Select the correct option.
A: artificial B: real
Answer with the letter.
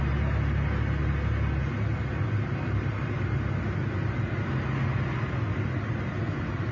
B